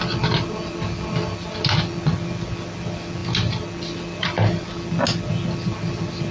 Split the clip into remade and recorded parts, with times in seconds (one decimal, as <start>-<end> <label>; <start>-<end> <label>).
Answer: 0.0-6.3 recorded